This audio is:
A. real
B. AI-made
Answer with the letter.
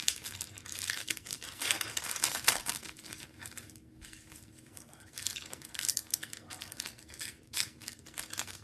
B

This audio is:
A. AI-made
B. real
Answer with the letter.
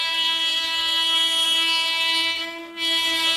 A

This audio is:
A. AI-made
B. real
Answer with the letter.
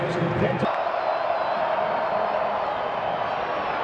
B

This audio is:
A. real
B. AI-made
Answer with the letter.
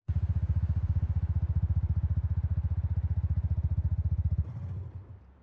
A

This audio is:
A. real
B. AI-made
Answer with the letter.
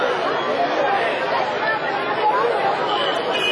A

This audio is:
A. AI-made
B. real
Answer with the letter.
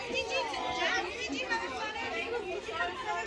B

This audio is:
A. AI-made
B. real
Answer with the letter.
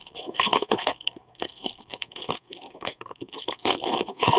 A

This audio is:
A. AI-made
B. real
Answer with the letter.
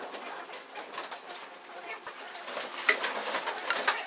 B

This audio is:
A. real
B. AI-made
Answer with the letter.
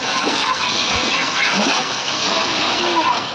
B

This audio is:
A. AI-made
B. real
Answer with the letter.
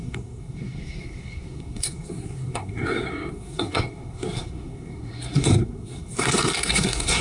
A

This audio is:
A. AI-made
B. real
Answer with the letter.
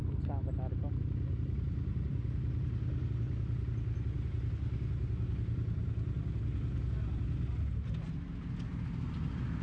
B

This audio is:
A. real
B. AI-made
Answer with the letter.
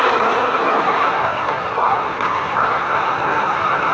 B